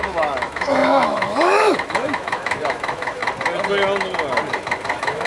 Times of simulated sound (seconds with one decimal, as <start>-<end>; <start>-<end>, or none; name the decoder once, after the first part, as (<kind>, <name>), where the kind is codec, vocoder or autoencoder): 0.0-3.2 (autoencoder, DAC-VAE); 4.5-5.3